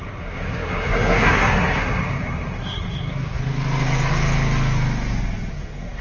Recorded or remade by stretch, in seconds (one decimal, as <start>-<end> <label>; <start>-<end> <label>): 0.0-3.4 remade; 3.4-5.5 recorded; 5.5-6.0 remade